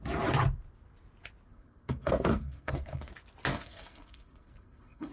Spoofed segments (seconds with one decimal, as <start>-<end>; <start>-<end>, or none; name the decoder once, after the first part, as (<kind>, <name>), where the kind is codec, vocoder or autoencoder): 1.5-3.1 (codec, SNAC); 3.5-5.1